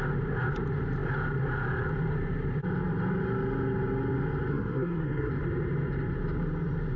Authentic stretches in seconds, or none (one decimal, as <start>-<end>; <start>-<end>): 0.0-4.5; 5.3-7.0